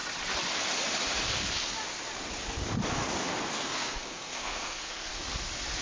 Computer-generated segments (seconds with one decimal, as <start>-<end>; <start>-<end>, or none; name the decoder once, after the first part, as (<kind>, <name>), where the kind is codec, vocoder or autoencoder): 3.5-5.1 (codec, SNAC)